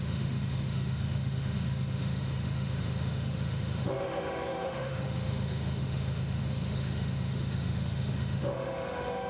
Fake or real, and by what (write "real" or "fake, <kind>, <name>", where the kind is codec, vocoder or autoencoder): fake, autoencoder, DAC-VAE